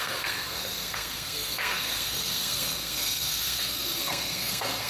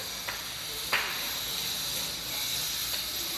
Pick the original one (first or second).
second